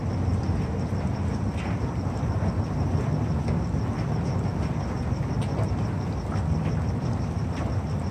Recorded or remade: recorded